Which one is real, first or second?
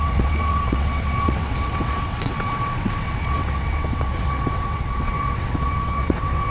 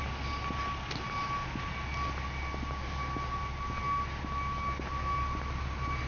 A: second